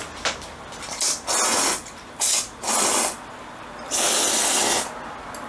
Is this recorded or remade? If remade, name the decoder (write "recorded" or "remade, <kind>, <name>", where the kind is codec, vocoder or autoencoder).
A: recorded